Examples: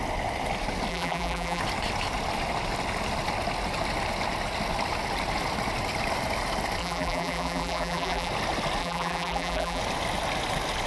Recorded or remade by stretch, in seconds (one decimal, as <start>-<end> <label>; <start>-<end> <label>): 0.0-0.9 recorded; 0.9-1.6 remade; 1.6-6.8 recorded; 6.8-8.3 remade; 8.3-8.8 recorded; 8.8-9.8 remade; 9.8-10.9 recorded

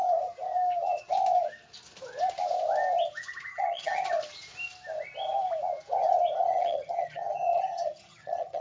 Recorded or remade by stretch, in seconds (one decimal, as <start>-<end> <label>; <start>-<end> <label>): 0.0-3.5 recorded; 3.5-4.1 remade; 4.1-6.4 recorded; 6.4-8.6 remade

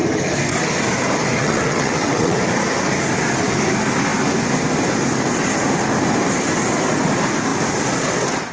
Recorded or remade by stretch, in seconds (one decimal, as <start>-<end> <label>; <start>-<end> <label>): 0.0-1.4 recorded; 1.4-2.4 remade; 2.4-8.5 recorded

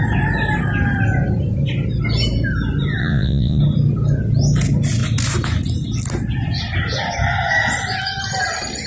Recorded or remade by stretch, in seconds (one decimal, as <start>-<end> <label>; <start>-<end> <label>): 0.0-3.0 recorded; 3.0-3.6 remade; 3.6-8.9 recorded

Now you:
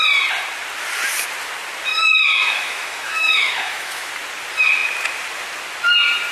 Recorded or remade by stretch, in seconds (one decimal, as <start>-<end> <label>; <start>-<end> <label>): 0.0-1.9 recorded; 1.9-4.1 remade; 4.1-6.3 recorded

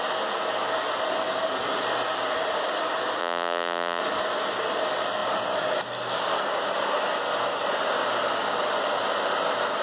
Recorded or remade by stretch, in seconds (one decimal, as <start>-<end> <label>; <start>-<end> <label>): 0.0-3.2 recorded; 3.2-4.0 remade; 4.0-9.8 recorded

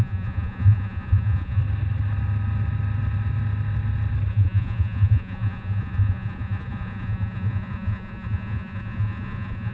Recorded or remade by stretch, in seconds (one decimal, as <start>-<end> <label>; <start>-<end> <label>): 0.0-1.6 remade; 1.6-4.3 recorded; 4.3-9.7 remade

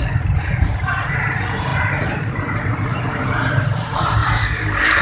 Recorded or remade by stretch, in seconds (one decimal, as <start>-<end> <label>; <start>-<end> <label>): 0.0-5.0 remade